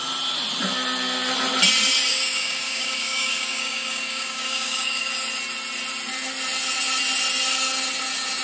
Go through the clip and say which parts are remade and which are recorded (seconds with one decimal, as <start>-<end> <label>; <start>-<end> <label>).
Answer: 0.0-2.1 recorded; 2.1-5.1 remade; 5.1-8.4 recorded